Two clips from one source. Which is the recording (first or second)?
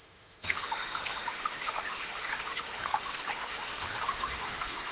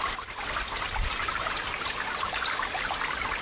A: second